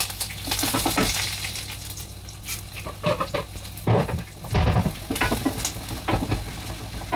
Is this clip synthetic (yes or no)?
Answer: no